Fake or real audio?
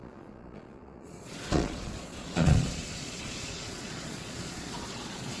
fake